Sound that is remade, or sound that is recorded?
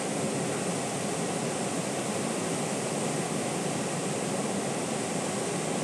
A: recorded